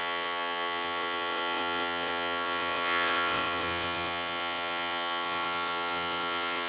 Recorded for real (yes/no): no